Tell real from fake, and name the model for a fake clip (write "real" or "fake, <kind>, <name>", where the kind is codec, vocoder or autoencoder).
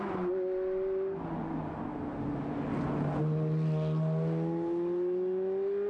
real